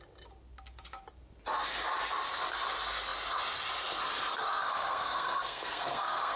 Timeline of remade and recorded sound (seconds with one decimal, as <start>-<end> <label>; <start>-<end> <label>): 0.0-4.6 recorded; 4.6-6.4 remade